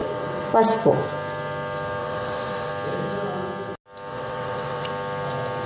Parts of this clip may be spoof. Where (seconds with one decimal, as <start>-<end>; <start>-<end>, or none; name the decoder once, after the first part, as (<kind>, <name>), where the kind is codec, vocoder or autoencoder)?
0.0-0.5 (vocoder, WaveNeXt); 2.0-2.7; 4.1-4.9